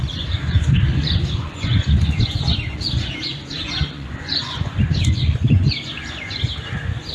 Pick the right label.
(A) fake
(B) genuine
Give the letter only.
A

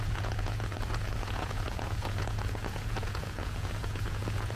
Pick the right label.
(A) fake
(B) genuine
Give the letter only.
A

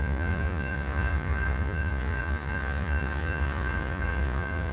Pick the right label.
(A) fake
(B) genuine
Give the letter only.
A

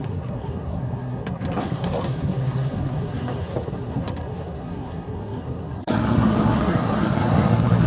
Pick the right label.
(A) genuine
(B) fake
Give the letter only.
B